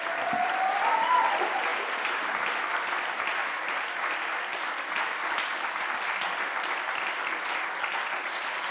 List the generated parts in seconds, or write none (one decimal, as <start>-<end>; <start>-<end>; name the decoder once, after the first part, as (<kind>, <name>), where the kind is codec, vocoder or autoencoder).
none